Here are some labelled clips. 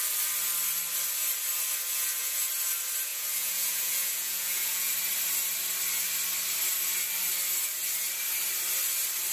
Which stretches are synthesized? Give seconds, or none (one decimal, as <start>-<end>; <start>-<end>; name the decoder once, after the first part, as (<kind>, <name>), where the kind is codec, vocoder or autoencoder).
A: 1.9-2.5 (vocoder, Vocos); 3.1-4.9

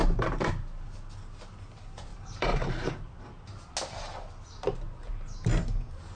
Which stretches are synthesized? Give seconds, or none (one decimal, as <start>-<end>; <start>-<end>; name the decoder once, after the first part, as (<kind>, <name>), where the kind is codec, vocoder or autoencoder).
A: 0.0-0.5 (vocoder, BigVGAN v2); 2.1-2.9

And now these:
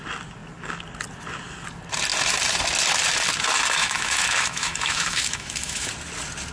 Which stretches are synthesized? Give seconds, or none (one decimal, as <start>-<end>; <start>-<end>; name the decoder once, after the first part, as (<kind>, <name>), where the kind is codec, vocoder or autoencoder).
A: 3.8-5.9 (autoencoder, DAC-VAE)

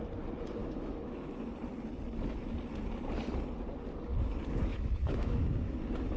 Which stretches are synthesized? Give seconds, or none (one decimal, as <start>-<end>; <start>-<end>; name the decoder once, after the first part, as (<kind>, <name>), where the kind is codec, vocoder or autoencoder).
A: 0.6-1.4 (autoencoder, DAC-VAE); 4.7-5.8